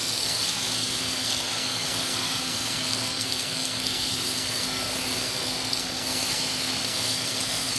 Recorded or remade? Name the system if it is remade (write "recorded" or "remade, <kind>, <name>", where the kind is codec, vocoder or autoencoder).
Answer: remade, codec, SNAC